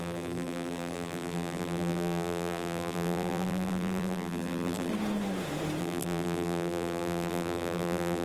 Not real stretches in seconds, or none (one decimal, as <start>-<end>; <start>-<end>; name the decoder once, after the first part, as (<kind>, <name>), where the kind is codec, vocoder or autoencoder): 0.0-4.9 (vocoder, BigVGAN v2); 5.8-8.2